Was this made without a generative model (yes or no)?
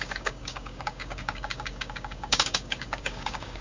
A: no